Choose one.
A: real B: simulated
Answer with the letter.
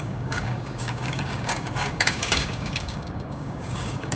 B